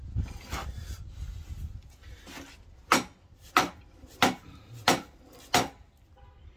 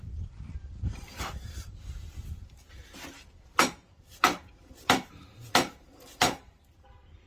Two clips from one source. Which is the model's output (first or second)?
second